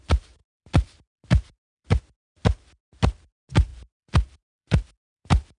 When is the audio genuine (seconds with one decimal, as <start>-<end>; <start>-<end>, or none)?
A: 0.0-0.4; 2.0-3.7